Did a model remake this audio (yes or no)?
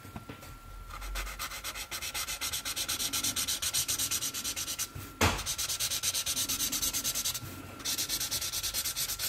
no